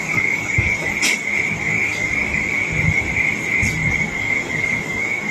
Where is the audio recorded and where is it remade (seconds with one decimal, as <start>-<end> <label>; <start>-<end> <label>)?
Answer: 0.0-0.9 remade; 0.9-1.6 recorded; 1.6-2.6 remade; 2.6-4.0 recorded; 4.0-5.3 remade